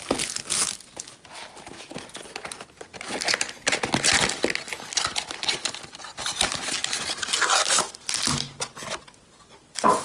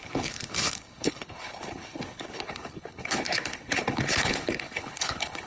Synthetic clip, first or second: second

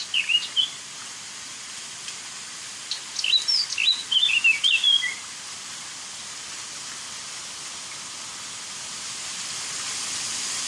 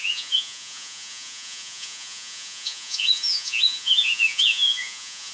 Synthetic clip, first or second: second